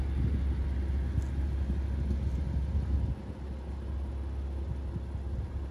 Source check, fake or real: real